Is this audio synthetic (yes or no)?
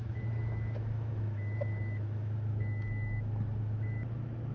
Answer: yes